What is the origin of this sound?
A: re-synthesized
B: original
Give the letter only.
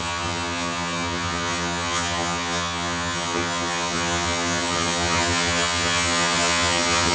A